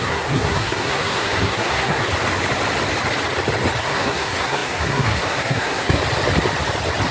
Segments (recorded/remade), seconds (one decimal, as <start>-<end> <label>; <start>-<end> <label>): 0.0-2.1 remade; 2.1-3.8 recorded; 3.8-6.0 remade; 6.0-7.1 recorded